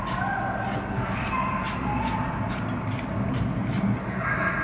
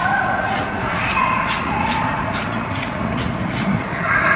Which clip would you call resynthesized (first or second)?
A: second